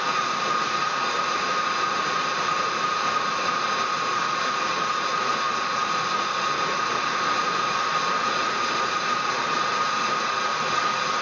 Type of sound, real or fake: fake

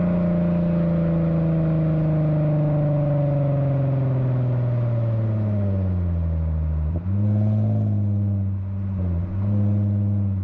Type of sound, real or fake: real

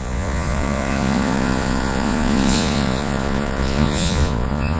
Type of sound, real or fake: fake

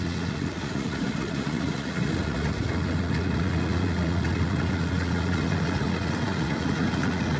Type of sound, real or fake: fake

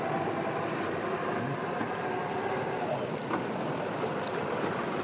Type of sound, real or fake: real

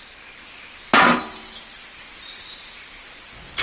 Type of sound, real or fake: real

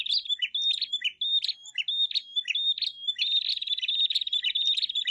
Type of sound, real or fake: real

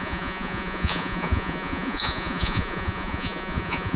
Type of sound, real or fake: fake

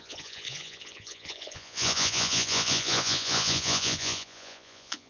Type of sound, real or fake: fake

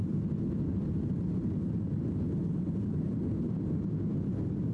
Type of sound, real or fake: real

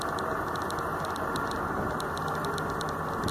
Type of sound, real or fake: real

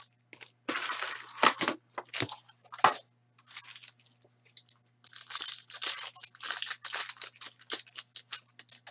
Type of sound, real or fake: real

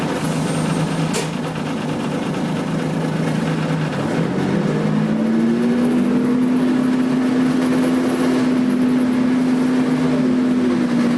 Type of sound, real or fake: real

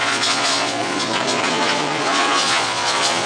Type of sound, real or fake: fake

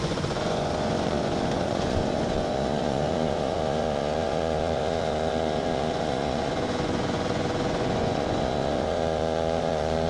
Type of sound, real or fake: fake